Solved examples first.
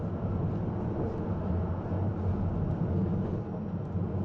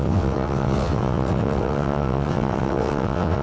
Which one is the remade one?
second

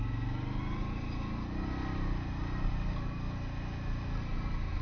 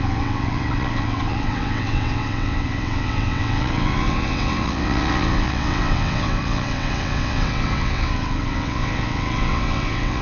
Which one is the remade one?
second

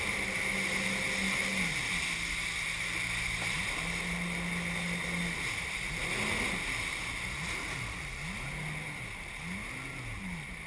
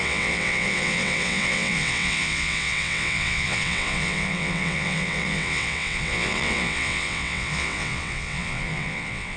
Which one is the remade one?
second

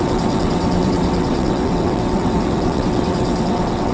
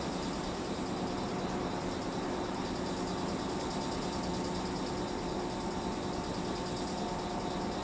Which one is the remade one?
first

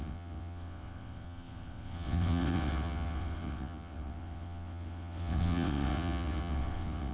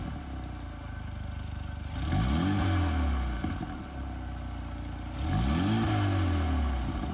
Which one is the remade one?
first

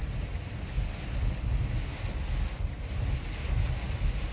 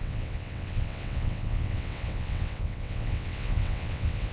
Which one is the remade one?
second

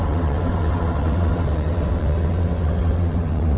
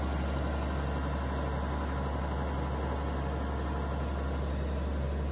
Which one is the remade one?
first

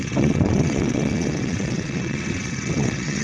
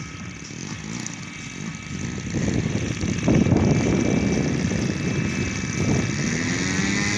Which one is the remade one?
first